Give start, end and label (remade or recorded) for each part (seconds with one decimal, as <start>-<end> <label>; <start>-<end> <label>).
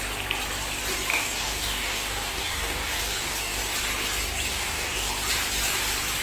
0.0-1.1 recorded; 1.1-3.6 remade; 3.6-4.5 recorded; 4.5-5.1 remade; 5.1-6.2 recorded